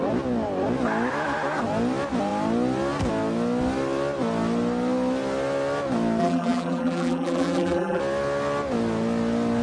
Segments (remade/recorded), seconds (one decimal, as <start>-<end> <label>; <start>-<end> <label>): 0.0-6.2 recorded; 6.2-8.0 remade; 8.0-9.6 recorded